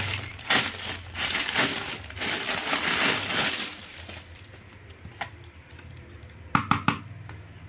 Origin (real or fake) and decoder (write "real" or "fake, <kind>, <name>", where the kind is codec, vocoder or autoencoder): real